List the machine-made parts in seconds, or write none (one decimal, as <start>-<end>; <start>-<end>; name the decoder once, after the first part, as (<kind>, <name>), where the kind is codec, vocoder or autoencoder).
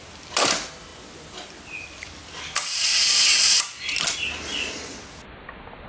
none